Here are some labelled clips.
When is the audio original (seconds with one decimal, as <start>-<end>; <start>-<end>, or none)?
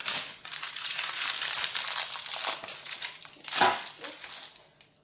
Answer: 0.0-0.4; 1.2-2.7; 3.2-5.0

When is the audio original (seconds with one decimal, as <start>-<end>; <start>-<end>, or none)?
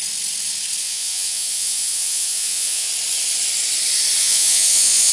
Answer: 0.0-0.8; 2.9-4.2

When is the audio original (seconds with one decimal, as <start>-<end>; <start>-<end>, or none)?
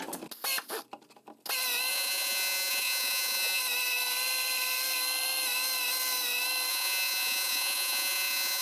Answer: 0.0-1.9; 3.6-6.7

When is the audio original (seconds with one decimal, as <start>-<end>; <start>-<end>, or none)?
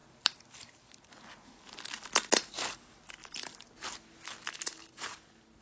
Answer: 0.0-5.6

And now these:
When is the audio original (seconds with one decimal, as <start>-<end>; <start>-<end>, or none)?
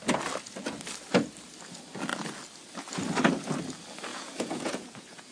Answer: 0.0-4.1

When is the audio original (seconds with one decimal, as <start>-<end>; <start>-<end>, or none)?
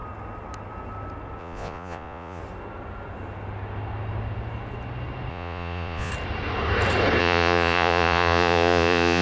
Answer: 0.0-1.4; 2.4-5.3; 6.1-7.2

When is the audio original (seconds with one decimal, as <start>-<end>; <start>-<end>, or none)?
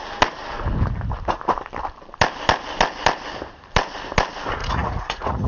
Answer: 0.0-4.6